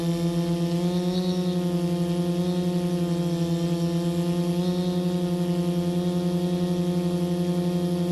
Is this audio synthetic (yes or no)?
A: no